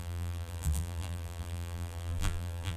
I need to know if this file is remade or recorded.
remade